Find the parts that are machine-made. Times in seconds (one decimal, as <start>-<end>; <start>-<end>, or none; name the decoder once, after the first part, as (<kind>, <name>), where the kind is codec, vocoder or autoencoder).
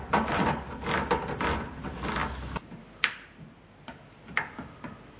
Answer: none